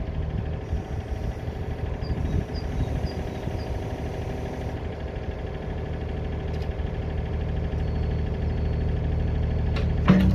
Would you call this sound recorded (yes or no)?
yes